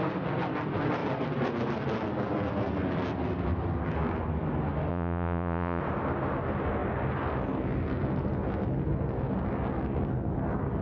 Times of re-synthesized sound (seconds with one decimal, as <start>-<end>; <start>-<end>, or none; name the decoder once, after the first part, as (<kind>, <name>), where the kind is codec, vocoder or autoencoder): 4.9-5.8 (vocoder, Vocos)